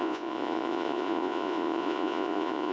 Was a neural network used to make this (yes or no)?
yes